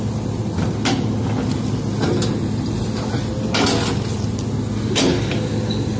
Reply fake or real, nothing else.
real